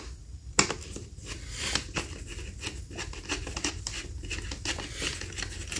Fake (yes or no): no